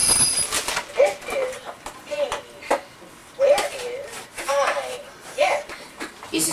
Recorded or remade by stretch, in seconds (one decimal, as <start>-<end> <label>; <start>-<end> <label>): 0.0-1.4 recorded; 1.4-2.3 remade; 2.3-3.2 recorded; 3.2-6.1 remade; 6.1-6.5 recorded